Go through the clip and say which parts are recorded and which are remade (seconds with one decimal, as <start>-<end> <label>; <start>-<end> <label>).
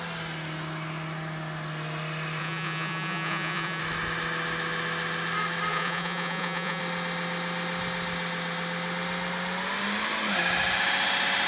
0.0-2.4 recorded; 2.4-3.8 remade; 3.8-5.7 recorded; 5.7-6.8 remade; 6.8-11.5 recorded